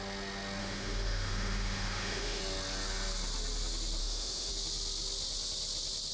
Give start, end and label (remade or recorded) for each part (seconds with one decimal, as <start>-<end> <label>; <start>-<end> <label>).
0.0-0.6 recorded; 0.6-2.4 remade; 2.4-4.0 recorded; 4.0-4.5 remade; 4.5-6.1 recorded